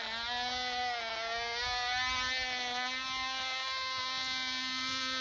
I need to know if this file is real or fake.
real